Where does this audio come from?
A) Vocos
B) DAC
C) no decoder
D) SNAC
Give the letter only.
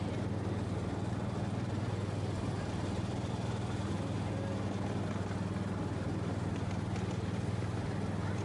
C